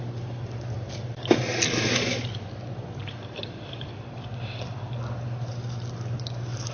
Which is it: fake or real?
real